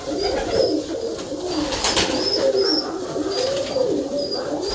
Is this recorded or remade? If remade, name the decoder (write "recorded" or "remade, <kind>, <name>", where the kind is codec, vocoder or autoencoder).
recorded